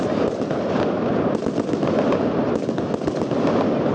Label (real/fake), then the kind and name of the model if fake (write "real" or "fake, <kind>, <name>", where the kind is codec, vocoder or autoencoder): real